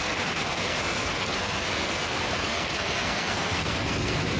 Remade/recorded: remade